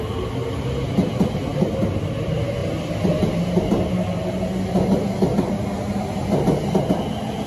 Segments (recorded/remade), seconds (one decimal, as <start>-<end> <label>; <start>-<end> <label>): 0.0-7.5 recorded

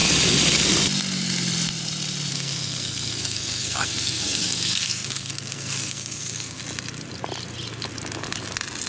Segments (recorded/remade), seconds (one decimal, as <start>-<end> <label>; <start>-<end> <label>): 0.0-2.3 recorded; 2.3-6.6 remade; 6.6-8.9 recorded

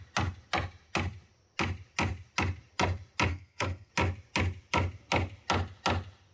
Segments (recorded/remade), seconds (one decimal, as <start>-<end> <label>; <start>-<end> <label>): 0.0-3.3 recorded; 3.3-3.9 remade; 3.9-6.3 recorded

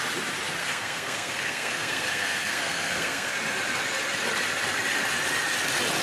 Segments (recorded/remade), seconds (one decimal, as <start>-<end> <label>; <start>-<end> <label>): 0.0-0.6 recorded; 0.6-3.3 remade; 3.3-6.0 recorded

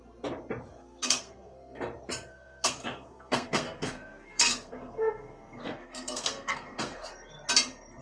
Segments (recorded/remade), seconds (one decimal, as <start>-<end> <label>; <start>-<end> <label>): 0.0-0.7 recorded; 0.7-1.8 remade; 1.8-2.3 recorded; 2.3-7.1 remade; 7.1-8.0 recorded

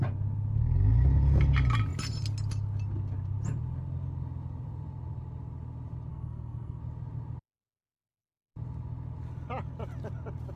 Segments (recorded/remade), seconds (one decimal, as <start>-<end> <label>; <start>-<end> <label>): 0.0-6.1 recorded; 6.1-6.8 remade; 6.8-10.6 recorded

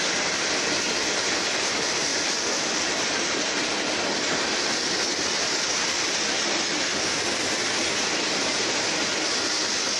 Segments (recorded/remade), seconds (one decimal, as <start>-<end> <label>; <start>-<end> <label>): 0.0-10.0 recorded